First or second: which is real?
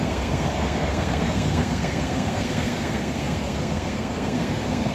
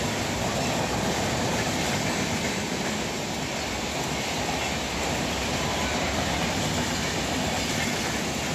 second